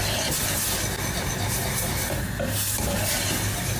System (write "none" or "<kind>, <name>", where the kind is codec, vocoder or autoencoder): none